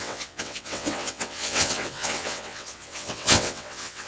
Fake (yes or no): yes